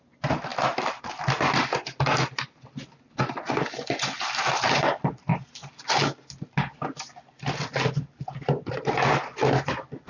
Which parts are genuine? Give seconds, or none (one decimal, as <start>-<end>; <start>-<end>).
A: 0.0-10.1